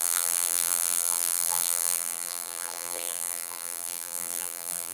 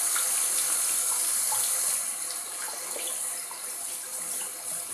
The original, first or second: second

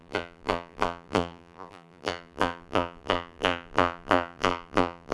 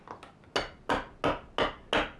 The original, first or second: second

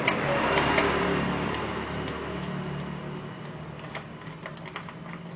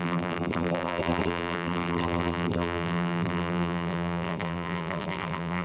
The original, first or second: first